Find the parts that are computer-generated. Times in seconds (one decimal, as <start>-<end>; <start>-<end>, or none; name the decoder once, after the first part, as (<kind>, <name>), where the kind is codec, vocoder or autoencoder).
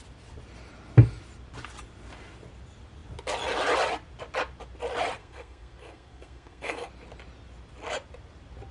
5.2-6.9 (codec, SNAC)